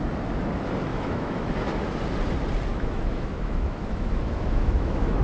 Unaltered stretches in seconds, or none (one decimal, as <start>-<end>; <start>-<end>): 0.0-0.9; 1.5-2.7